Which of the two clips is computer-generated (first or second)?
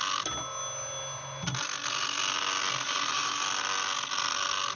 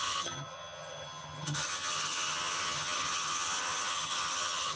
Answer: second